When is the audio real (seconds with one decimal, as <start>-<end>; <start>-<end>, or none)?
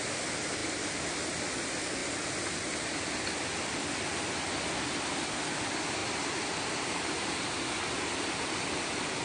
0.0-9.2